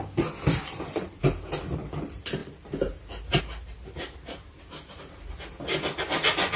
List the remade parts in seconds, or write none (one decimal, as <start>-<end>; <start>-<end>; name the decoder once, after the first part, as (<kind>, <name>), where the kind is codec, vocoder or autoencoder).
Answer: none

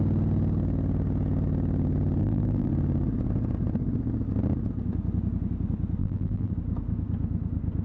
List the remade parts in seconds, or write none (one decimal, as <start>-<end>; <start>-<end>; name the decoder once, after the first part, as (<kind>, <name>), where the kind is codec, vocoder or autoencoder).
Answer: 2.2-2.7 (vocoder, BigVGAN v2); 6.0-6.5

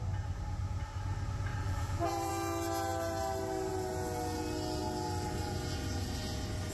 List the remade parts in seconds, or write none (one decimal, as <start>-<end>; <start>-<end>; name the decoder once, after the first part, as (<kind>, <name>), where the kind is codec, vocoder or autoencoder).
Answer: 1.5-2.3 (vocoder, BigVGAN v2)

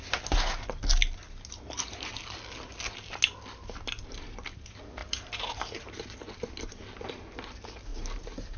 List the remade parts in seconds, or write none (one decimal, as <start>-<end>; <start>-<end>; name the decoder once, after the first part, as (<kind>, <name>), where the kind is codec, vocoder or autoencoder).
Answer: 5.0-6.0 (vocoder, BigVGAN v2); 7.9-8.6